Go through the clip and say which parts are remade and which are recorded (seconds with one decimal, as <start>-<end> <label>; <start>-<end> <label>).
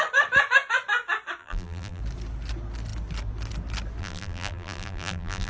0.0-1.4 recorded; 1.4-2.0 remade; 2.0-4.0 recorded; 4.0-5.5 remade